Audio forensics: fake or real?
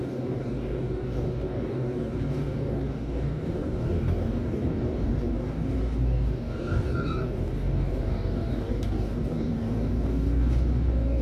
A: fake